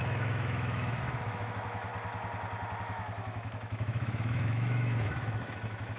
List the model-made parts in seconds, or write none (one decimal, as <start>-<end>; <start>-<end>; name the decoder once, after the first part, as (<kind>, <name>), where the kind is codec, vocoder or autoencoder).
0.0-1.9 (autoencoder, DAC-VAE); 2.8-6.0